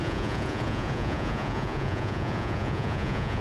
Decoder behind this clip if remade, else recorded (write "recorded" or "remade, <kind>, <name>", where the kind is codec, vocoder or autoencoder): remade, vocoder, Vocos